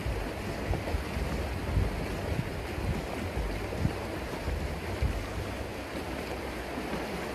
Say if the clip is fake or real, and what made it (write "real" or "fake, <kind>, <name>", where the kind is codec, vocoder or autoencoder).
real